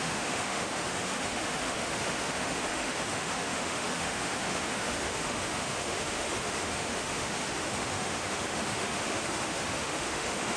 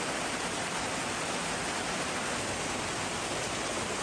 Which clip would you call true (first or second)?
second